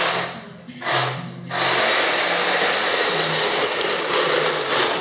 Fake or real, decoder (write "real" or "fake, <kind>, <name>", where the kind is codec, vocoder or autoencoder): real